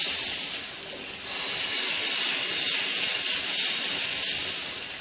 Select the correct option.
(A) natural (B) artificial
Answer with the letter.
A